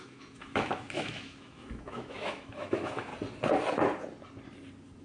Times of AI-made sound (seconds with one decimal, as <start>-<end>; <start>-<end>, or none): 0.0-3.1